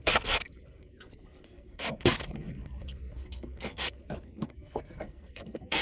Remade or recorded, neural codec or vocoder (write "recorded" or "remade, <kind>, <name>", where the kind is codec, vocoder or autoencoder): remade, codec, SNAC